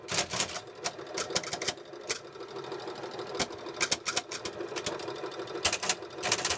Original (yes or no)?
yes